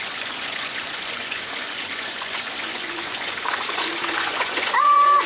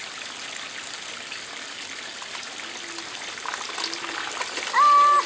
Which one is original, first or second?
second